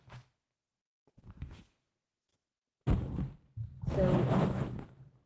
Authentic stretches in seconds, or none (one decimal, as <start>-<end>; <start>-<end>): 2.3-4.3